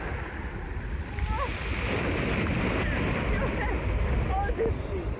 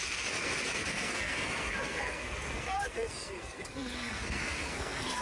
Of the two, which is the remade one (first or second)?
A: second